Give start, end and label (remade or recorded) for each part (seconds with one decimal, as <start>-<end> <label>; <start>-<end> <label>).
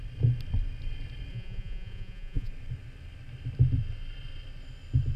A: 0.0-1.3 recorded; 1.3-2.5 remade; 2.5-5.2 recorded